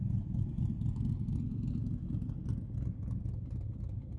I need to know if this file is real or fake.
real